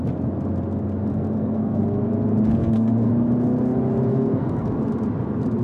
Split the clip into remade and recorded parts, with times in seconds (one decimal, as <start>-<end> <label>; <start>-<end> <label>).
0.0-1.1 recorded; 1.1-2.0 remade; 2.0-2.6 recorded; 2.6-3.1 remade; 3.1-4.1 recorded; 4.1-4.8 remade; 4.8-5.6 recorded